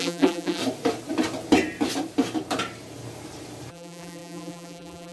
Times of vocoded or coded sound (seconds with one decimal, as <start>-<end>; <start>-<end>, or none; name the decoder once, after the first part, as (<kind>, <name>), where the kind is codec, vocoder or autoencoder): 0.0-0.6 (vocoder, BigVGAN v2); 3.7-5.1